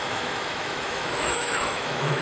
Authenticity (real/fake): fake